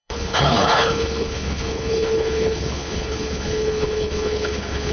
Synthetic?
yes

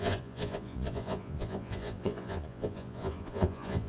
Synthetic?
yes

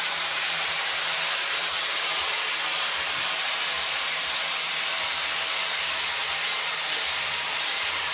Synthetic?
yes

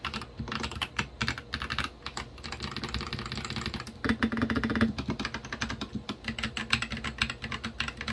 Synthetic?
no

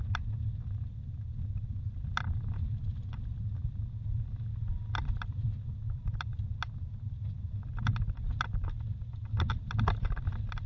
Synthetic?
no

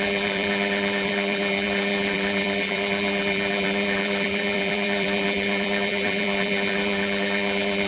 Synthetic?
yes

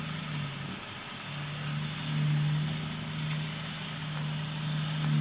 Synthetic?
no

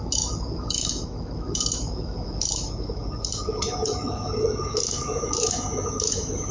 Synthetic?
yes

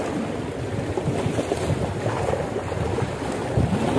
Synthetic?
no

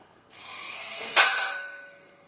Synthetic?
yes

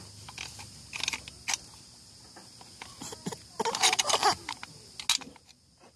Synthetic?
no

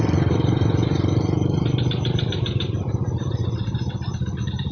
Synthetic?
no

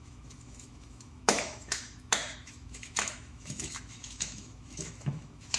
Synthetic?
yes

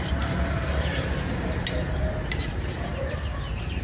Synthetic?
no